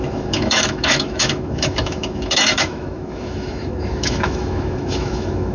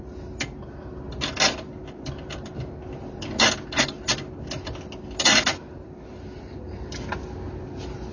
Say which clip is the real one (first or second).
second